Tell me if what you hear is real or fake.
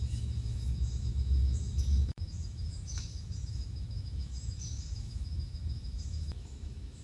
fake